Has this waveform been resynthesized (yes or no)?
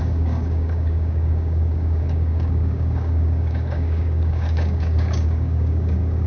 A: yes